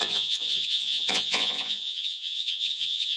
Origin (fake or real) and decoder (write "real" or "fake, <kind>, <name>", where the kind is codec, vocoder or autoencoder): fake, vocoder, Vocos